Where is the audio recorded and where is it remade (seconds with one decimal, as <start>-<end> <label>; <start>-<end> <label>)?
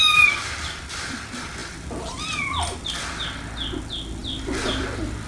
0.0-5.3 recorded